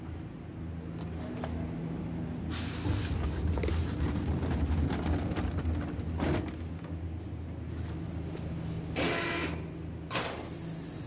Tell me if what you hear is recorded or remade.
recorded